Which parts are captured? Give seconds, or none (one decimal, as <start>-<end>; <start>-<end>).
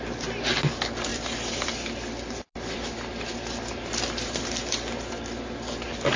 0.0-1.1; 4.6-6.2